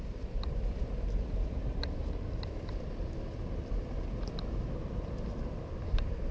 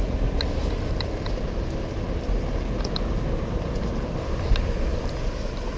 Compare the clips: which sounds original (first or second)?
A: second